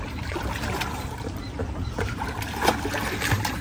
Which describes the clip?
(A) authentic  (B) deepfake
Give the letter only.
B